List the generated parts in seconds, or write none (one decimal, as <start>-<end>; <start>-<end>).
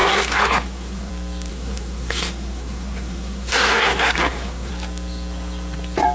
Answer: 0.0-1.1; 1.5-4.7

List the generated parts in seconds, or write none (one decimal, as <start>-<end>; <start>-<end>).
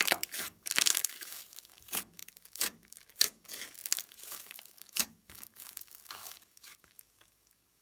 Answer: 0.0-7.8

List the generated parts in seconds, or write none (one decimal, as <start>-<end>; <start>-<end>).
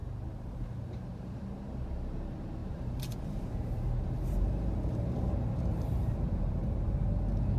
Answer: 0.0-1.2; 2.6-7.1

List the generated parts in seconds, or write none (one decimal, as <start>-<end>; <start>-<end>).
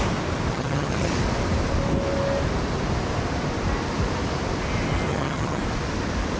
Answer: 0.5-1.1; 5.1-5.6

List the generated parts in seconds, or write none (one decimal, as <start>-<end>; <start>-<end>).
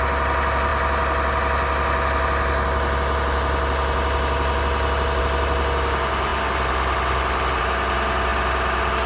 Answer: none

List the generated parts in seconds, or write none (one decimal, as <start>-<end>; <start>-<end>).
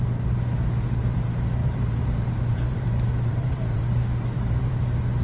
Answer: 1.6-4.7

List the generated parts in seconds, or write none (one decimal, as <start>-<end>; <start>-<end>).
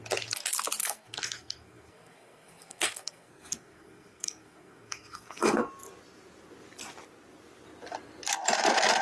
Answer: 0.8-5.7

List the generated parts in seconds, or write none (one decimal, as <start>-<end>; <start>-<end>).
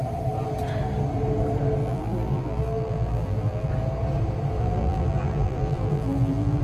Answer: 1.8-3.7; 4.6-6.6